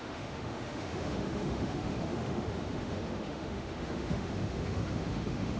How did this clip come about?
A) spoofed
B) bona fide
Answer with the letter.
A